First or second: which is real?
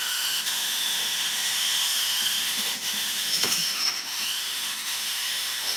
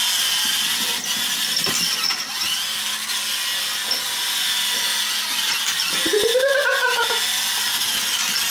second